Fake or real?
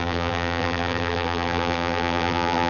fake